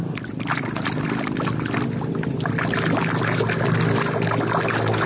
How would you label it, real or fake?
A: real